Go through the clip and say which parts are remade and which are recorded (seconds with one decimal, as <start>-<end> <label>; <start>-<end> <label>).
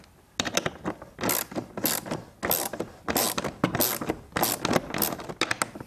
0.0-5.9 recorded